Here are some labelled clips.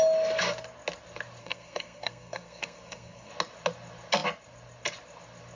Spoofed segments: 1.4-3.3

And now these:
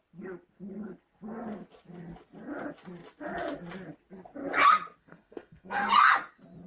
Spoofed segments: 5.0-5.9

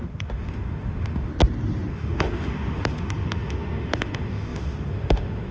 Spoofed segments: 0.0-1.3; 1.9-5.5

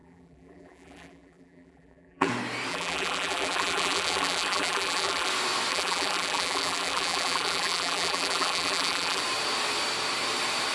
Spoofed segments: 0.0-2.3; 2.7-5.3; 5.7-9.2

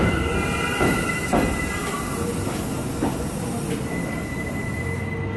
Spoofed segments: none

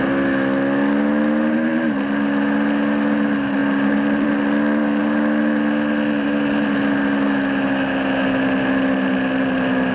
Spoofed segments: none

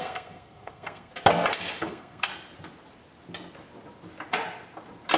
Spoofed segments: 0.0-1.1; 1.8-2.3

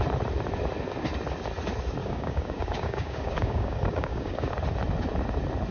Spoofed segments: 2.0-4.5